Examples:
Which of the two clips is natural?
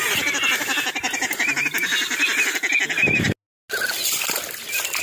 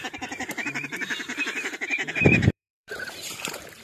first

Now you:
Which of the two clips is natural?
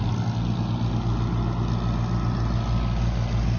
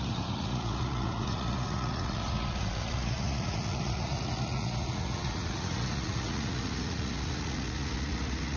first